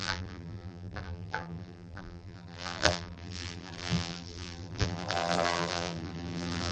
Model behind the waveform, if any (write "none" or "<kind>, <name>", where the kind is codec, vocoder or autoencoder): vocoder, BigVGAN v2